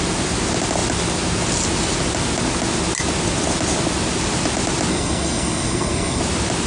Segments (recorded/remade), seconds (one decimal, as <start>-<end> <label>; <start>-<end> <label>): 0.0-4.9 recorded; 4.9-6.2 remade; 6.2-6.7 recorded